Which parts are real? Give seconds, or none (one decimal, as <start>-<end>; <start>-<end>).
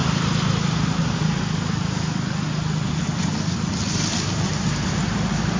1.4-5.6